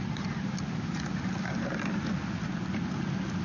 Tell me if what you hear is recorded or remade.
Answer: recorded